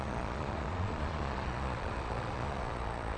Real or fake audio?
fake